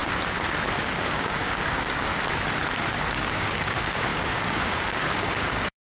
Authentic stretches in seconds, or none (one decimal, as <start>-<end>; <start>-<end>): 0.0-0.8; 2.1-3.1